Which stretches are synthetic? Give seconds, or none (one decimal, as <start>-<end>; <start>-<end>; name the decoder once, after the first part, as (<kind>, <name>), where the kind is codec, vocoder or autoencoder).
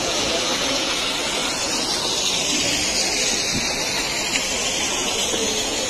0.0-1.4 (vocoder, Vocos); 4.9-5.9